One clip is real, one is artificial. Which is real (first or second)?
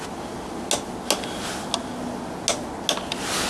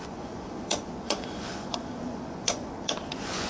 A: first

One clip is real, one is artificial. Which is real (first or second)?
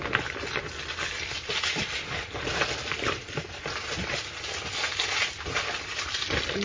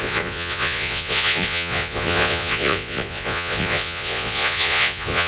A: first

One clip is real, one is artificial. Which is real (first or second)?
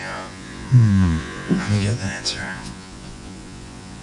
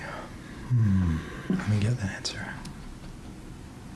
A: second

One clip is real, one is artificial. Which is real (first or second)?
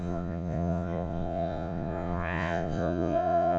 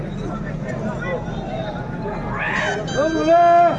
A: second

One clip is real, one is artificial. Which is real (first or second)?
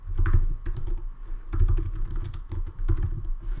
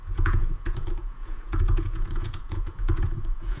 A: first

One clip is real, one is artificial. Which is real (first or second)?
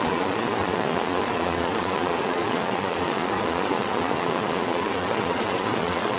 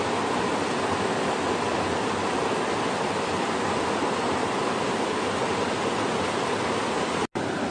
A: second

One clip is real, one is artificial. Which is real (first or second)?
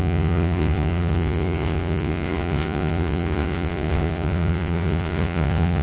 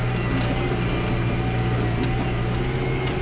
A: second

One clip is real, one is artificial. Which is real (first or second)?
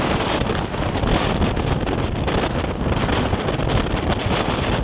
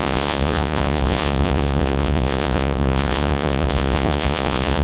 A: first